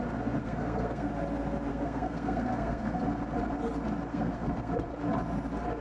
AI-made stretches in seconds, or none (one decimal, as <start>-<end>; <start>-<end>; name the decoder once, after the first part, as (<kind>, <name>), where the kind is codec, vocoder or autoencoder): 0.4-1.1 (codec, SNAC); 1.7-3.0; 4.1-4.7